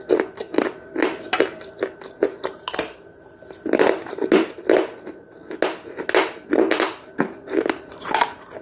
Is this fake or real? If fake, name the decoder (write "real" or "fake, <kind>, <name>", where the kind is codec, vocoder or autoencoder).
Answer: real